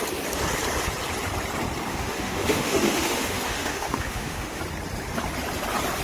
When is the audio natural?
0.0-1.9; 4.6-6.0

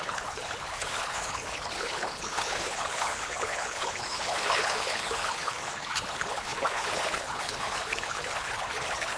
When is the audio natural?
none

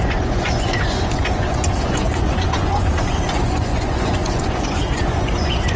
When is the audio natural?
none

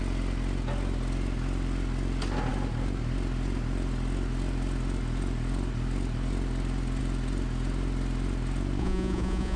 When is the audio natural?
0.0-8.8

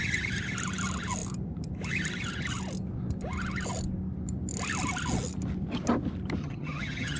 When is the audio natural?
0.0-6.4

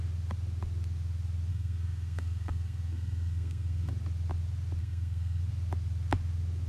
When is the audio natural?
0.0-1.5; 3.9-4.8; 5.4-6.7